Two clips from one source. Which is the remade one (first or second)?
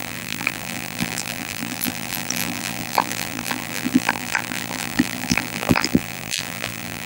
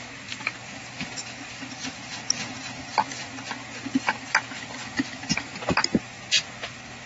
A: first